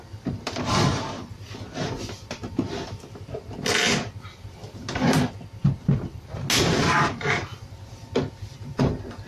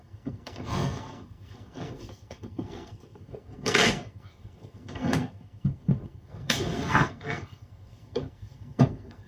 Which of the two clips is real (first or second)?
first